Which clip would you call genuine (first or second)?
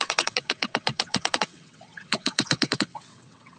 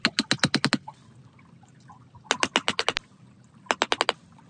second